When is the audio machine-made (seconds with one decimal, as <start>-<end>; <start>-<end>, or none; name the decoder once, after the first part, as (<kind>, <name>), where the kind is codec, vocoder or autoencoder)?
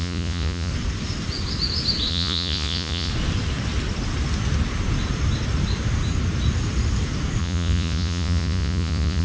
0.0-0.7 (vocoder, Vocos); 2.1-3.1; 7.4-9.2